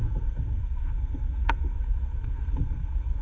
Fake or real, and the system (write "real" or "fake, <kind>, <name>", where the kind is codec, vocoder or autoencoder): fake, codec, SNAC